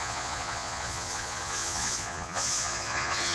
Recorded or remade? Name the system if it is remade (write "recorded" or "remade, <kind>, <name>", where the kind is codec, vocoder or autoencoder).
remade, vocoder, Vocos